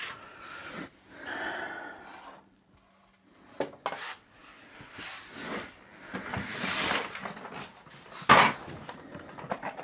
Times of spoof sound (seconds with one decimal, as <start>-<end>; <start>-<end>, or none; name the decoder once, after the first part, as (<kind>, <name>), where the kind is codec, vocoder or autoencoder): none